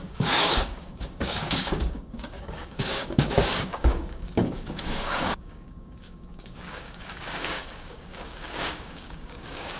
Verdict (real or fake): fake